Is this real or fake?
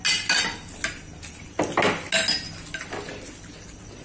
real